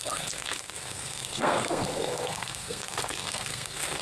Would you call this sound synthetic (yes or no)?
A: yes